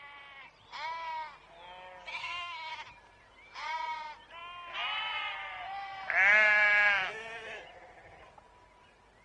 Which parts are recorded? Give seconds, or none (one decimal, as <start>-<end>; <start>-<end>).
0.0-2.2; 2.7-9.2